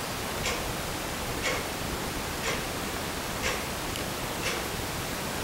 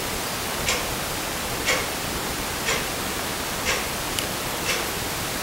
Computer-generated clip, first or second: first